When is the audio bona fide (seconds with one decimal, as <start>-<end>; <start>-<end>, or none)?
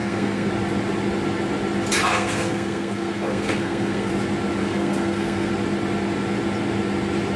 0.5-2.1; 4.1-4.6; 5.5-7.4